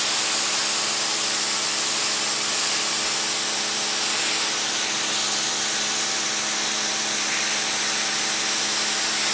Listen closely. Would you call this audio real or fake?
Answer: real